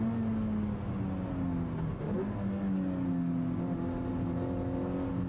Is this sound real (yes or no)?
yes